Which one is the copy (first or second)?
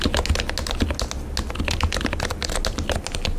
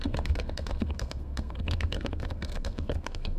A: second